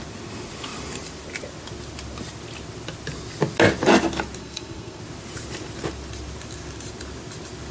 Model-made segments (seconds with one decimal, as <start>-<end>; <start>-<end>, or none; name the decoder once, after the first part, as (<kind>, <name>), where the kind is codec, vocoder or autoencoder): 4.4-5.0 (codec, SNAC)